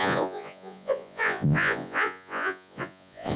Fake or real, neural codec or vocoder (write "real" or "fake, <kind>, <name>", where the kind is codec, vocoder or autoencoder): fake, vocoder, Vocos